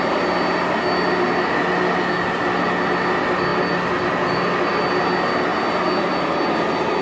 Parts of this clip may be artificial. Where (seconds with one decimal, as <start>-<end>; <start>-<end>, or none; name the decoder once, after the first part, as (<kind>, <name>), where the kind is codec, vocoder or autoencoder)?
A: none

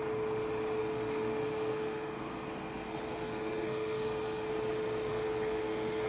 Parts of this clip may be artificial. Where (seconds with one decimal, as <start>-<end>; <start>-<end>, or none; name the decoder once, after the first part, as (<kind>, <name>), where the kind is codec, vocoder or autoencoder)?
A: 0.8-4.5 (codec, SNAC); 5.1-6.1